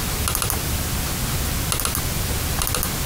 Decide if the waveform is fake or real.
real